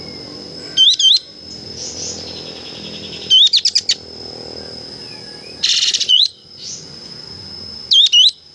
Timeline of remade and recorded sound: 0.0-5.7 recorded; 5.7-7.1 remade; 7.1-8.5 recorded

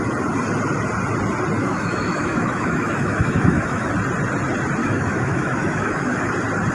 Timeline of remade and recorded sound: 0.0-1.6 recorded; 1.6-3.9 remade; 3.9-4.8 recorded; 4.8-6.3 remade; 6.3-6.7 recorded

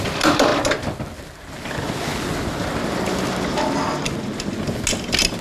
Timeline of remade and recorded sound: 0.0-5.4 recorded

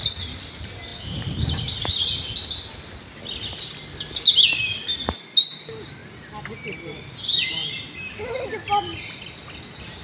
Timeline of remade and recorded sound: 0.0-10.0 recorded

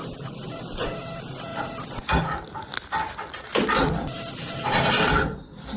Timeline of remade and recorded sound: 0.0-5.8 remade